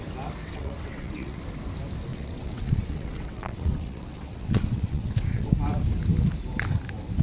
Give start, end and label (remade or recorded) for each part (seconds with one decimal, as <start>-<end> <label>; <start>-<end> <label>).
0.0-0.4 recorded; 0.4-1.4 remade; 1.4-2.1 recorded; 2.1-5.5 remade; 5.5-7.2 recorded